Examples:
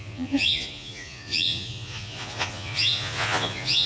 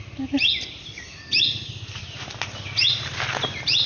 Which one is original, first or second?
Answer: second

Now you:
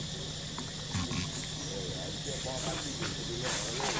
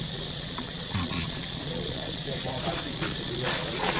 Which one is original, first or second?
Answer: first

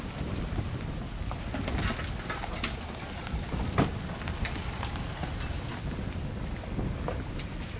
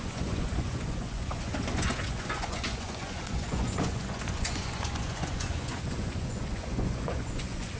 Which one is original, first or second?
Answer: first